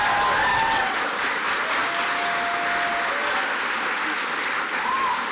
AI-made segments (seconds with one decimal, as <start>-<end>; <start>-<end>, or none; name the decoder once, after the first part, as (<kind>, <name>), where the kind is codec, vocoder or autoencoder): 0.5-1.0 (vocoder, WaveNeXt)